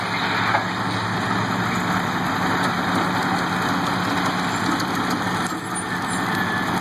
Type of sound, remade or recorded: recorded